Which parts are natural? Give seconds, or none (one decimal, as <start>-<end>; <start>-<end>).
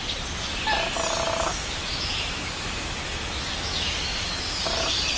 0.0-1.5; 4.6-5.2